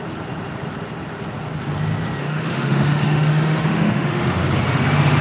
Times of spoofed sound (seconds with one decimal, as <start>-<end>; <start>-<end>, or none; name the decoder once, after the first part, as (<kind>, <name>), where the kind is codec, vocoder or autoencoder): 2.2-4.4 (autoencoder, DAC-VAE)